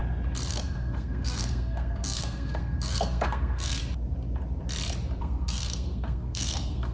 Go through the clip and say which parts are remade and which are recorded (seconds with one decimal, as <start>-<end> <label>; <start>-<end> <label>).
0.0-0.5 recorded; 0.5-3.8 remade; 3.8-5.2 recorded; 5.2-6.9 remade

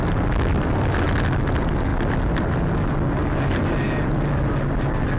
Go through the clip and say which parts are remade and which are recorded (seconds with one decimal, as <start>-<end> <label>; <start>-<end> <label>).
0.0-0.5 recorded; 0.5-1.0 remade; 1.0-5.2 recorded

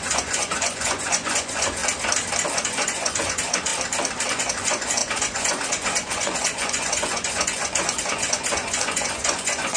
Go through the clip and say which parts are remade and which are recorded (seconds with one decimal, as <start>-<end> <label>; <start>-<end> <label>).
0.0-1.8 remade; 1.8-2.5 recorded; 2.5-3.7 remade; 3.7-4.3 recorded; 4.3-9.8 remade

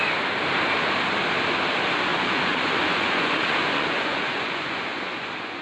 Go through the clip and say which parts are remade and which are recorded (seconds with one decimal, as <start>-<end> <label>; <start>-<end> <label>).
0.0-2.1 recorded; 2.1-5.6 remade

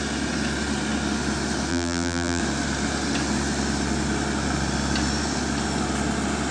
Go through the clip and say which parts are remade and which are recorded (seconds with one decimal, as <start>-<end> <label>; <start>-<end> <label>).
0.0-1.7 recorded; 1.7-2.4 remade; 2.4-6.5 recorded

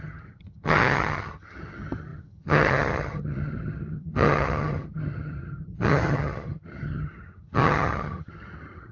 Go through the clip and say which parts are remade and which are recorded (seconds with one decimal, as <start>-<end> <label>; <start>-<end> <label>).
0.0-8.9 remade

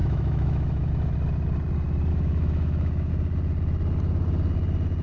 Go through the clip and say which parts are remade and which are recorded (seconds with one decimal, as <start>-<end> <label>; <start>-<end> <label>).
0.0-0.9 remade; 0.9-2.1 recorded; 2.1-3.1 remade; 3.1-5.0 recorded